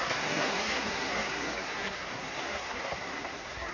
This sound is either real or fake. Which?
fake